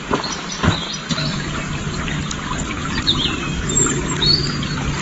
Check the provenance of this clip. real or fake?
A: real